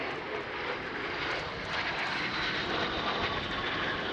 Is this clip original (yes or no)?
yes